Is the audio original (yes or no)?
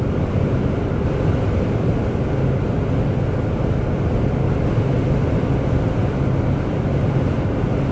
yes